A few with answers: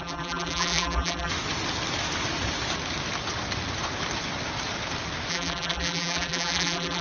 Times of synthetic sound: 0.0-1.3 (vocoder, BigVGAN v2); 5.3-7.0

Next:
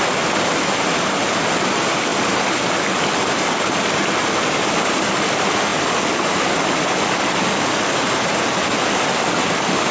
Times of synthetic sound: none

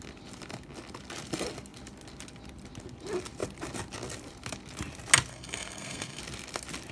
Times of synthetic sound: 5.3-6.2 (codec, SNAC)

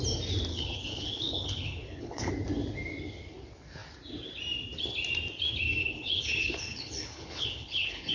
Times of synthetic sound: 0.5-2.3 (codec, HILCodec); 5.8-8.1

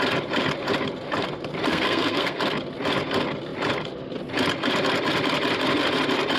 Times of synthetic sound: 1.7-2.4 (codec, SNAC)